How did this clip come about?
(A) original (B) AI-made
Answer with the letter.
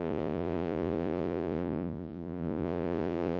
B